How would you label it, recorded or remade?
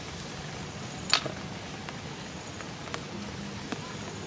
recorded